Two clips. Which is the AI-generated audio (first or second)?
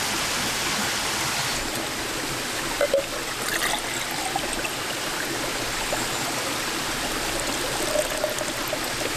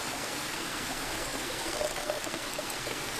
second